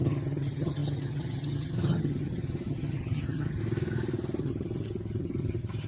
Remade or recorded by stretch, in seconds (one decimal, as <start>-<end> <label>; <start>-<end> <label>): 0.0-3.6 remade; 3.6-4.4 recorded; 4.4-5.9 remade